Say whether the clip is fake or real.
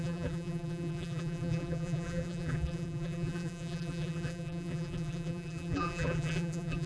fake